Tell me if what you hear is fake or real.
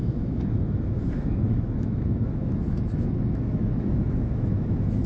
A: fake